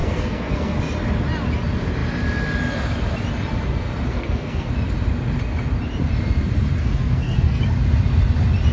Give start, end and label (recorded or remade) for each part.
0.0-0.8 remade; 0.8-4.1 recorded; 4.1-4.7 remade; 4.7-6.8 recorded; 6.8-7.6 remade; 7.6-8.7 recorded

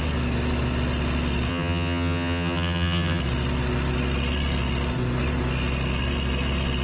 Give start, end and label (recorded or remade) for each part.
0.0-1.5 recorded; 1.5-3.2 remade; 3.2-6.8 recorded

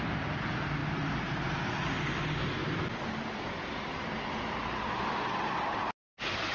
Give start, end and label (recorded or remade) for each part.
0.0-6.5 recorded

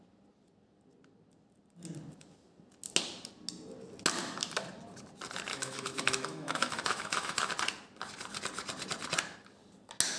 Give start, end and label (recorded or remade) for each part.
0.0-5.5 recorded; 5.5-7.5 remade; 7.5-10.2 recorded

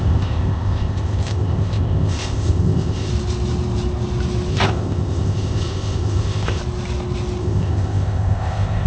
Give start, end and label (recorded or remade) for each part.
0.0-3.1 remade; 3.1-4.5 recorded; 4.5-6.6 remade; 6.6-7.4 recorded; 7.4-8.9 remade